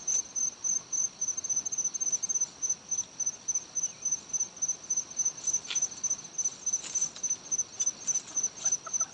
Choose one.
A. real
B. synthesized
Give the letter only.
A